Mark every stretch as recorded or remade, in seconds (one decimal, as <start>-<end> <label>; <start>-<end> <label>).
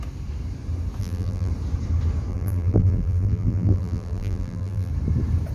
0.0-1.0 recorded; 1.0-1.5 remade; 1.5-2.3 recorded; 2.3-4.9 remade; 4.9-5.5 recorded